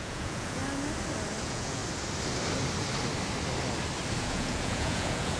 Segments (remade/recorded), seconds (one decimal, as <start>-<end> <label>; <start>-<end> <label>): 0.0-0.6 remade; 0.6-1.4 recorded; 1.4-1.8 remade; 1.8-4.2 recorded; 4.2-5.4 remade